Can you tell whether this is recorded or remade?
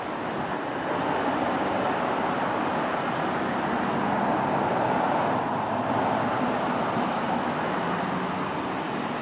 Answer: recorded